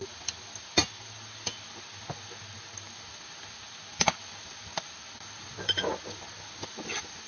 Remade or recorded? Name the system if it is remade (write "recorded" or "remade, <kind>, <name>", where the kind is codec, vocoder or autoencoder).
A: recorded